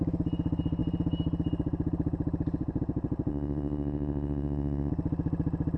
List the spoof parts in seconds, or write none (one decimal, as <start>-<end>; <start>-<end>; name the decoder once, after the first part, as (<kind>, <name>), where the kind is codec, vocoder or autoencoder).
3.3-4.9 (vocoder, WaveNeXt)